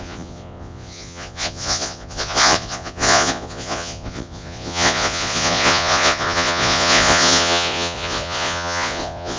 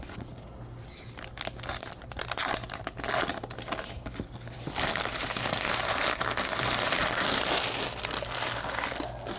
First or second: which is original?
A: second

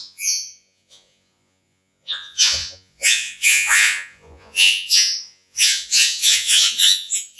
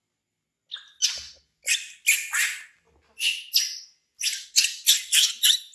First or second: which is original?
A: second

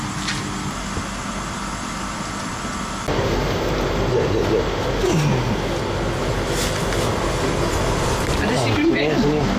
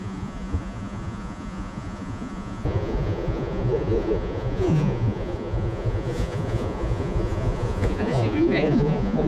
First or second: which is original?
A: first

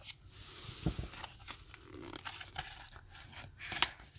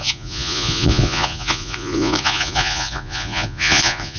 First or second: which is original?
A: first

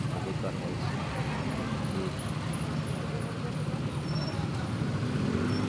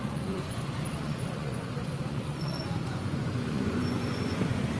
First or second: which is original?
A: first